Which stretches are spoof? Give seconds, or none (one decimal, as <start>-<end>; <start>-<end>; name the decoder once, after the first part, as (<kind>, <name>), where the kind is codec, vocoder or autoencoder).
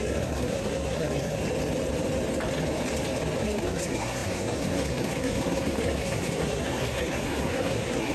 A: 0.0-1.4 (codec, SNAC); 3.4-8.1